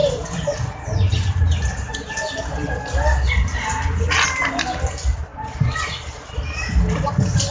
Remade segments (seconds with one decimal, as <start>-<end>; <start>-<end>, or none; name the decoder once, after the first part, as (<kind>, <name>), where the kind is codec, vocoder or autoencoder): none